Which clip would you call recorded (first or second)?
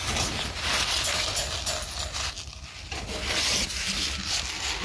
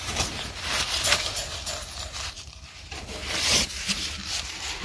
first